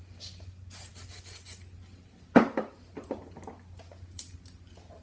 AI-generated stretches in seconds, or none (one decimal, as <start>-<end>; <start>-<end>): none